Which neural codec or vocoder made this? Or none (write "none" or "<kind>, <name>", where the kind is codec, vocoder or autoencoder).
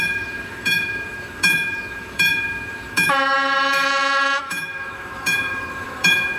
autoencoder, DAC-VAE